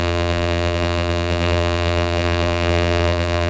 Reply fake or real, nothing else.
fake